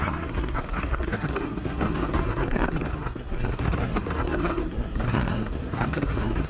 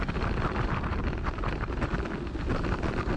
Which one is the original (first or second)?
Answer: second